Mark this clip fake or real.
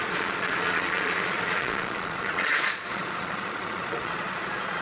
fake